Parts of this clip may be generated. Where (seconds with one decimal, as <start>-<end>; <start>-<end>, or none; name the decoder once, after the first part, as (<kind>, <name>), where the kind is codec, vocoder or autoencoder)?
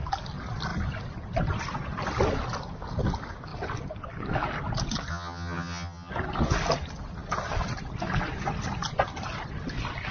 5.1-6.1 (vocoder, HiFi-GAN)